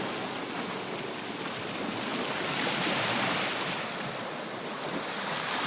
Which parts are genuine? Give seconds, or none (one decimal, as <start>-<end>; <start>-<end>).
0.0-5.7